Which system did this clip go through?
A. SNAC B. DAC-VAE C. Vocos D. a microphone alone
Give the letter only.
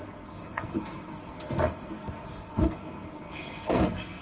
A